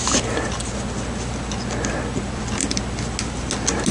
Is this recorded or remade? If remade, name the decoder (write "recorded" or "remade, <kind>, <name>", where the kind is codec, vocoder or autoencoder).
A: recorded